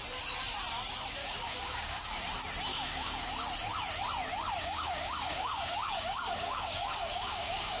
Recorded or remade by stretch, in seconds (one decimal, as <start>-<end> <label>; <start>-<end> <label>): 0.0-1.2 recorded; 1.2-2.2 remade; 2.2-2.7 recorded; 2.7-3.3 remade; 3.3-4.6 recorded; 4.6-7.8 remade